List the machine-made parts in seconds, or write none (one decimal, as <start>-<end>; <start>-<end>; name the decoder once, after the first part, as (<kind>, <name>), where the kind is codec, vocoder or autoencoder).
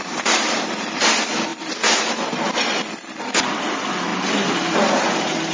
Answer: 0.0-1.5 (vocoder, BigVGAN v2); 2.9-5.5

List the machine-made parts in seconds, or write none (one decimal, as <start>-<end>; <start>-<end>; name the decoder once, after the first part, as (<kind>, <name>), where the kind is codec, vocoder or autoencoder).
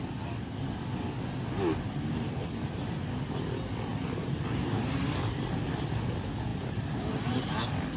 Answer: 3.9-5.6 (vocoder, BigVGAN v2); 6.5-7.4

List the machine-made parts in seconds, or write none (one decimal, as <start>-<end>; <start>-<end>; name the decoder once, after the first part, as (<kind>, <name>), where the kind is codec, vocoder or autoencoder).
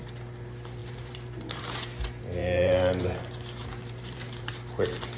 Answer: 0.8-1.9 (vocoder, BigVGAN v2); 2.4-3.0; 3.6-4.5